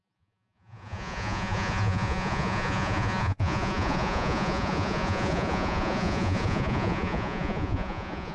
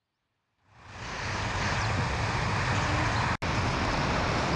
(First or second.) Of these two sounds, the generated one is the first